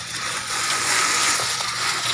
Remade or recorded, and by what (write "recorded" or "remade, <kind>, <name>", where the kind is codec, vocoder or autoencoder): remade, vocoder, Vocos